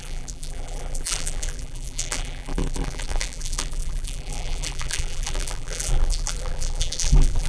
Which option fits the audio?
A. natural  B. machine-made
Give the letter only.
B